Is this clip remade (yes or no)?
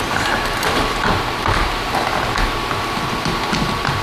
no